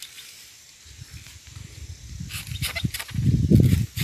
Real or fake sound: real